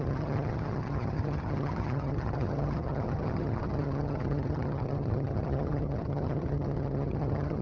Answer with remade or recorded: remade